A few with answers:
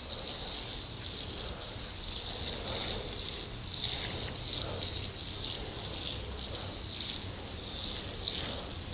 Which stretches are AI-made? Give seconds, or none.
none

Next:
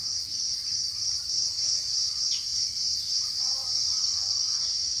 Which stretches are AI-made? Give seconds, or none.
4.0-4.6 (codec, SNAC)

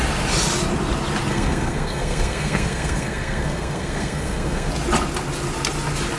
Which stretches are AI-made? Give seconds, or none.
1.3-4.7 (codec, SNAC)

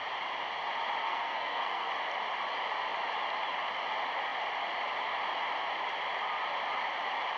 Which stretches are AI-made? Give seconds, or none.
1.0-1.9 (codec, SNAC)

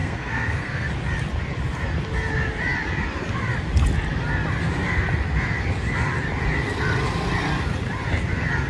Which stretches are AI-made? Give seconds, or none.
0.0-0.9 (codec, SNAC)

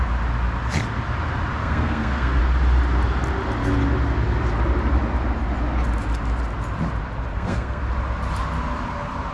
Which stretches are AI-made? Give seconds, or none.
1.6-2.4 (codec, SNAC); 7.3-7.8

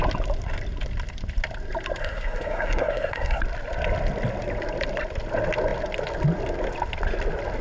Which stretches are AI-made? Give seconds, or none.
2.0-3.4 (codec, SNAC)

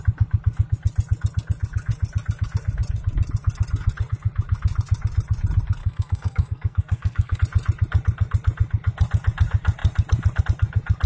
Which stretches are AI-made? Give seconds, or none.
5.8-7.4 (codec, SNAC)